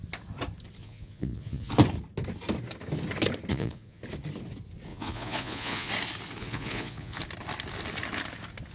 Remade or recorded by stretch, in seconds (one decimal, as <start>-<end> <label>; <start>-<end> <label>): 0.0-0.8 recorded; 0.8-1.7 remade; 1.7-3.5 recorded; 3.5-4.0 remade; 4.0-4.9 recorded; 4.9-5.9 remade; 5.9-6.4 recorded; 6.4-7.2 remade; 7.2-8.7 recorded

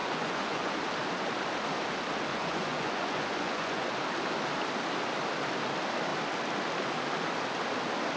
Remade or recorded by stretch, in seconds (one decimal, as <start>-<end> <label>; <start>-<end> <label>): 0.0-0.7 remade; 0.7-2.3 recorded; 2.3-3.9 remade; 3.9-8.2 recorded

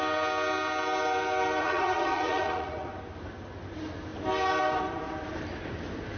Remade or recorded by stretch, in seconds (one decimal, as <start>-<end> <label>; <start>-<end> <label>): 0.0-1.6 recorded; 1.6-2.9 remade; 2.9-6.2 recorded

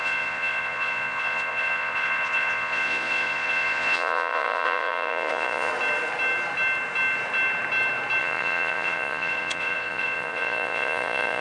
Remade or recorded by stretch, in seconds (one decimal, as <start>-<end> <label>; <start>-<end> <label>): 0.0-5.7 remade; 5.7-8.2 recorded; 8.2-11.4 remade

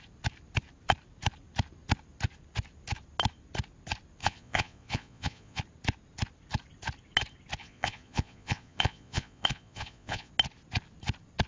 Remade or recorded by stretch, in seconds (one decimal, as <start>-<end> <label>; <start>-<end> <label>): 0.0-4.2 recorded; 4.2-5.6 remade; 5.6-7.6 recorded; 7.6-10.3 remade; 10.3-11.5 recorded

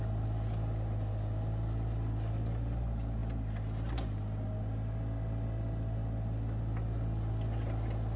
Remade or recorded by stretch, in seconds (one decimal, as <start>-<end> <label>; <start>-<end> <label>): 0.0-8.2 recorded

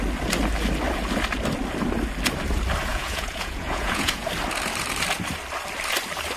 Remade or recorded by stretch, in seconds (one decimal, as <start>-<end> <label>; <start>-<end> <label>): 0.0-2.9 recorded; 2.9-4.3 remade; 4.3-6.4 recorded